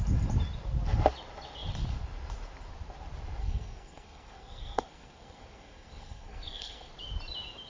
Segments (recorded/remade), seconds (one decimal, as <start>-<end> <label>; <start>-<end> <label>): 0.0-3.4 recorded; 3.4-6.9 remade; 6.9-7.7 recorded